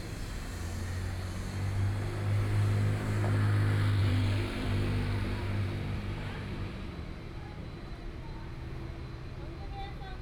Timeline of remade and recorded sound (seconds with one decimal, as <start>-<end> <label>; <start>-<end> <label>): 0.0-4.0 recorded; 4.0-6.9 remade; 6.9-7.6 recorded; 7.6-8.5 remade; 8.5-10.2 recorded